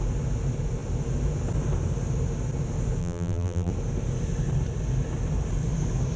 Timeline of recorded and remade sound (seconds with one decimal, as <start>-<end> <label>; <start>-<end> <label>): 0.0-3.0 recorded; 3.0-3.7 remade; 3.7-6.2 recorded